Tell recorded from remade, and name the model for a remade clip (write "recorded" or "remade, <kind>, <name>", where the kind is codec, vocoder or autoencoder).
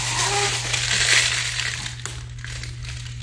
recorded